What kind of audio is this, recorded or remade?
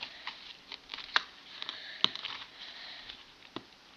recorded